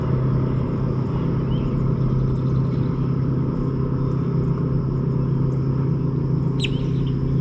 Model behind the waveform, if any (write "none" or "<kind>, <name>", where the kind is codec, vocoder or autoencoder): none